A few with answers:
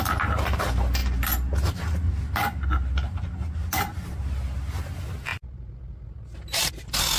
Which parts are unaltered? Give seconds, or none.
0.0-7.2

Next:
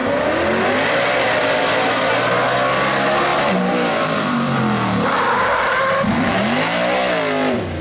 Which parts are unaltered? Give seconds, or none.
0.0-3.3; 4.6-7.8

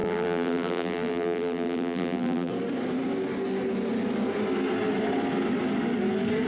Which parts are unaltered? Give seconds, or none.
2.5-6.5

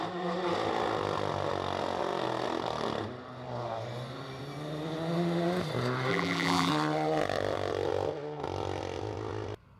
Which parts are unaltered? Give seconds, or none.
0.0-6.1; 6.7-9.8